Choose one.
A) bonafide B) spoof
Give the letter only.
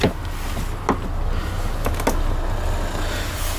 A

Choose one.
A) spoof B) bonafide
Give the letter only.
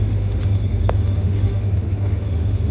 A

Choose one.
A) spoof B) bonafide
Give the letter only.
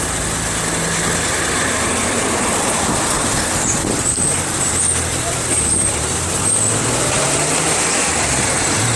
B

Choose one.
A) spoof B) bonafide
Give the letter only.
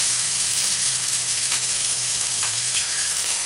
A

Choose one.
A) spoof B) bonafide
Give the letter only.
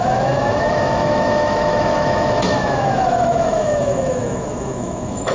A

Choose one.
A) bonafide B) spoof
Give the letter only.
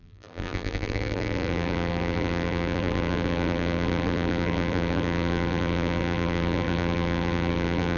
B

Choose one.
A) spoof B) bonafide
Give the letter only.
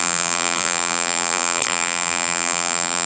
A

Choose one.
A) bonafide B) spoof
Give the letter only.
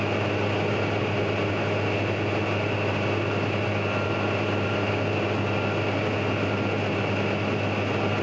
A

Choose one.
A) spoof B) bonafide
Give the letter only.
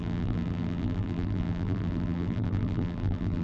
A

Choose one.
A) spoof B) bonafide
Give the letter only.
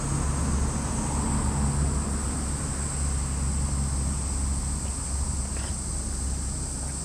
B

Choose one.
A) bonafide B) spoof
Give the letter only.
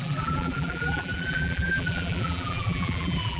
B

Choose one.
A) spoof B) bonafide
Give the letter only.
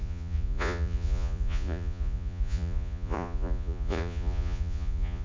A